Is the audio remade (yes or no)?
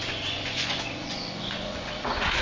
yes